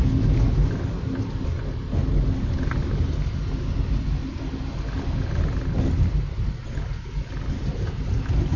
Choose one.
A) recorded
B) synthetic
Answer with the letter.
A